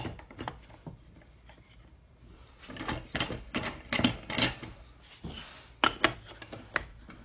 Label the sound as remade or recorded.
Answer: recorded